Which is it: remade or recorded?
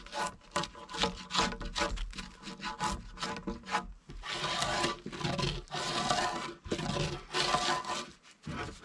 recorded